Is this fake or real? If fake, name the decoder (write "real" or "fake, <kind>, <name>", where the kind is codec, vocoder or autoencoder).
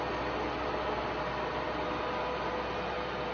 real